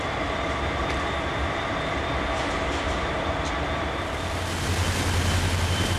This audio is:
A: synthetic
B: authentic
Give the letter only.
B